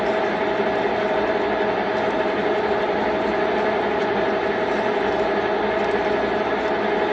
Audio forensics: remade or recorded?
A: recorded